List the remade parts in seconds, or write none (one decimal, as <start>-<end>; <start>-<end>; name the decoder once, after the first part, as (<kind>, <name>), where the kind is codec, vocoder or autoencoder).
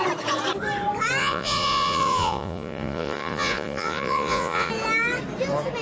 1.2-4.7 (vocoder, Vocos)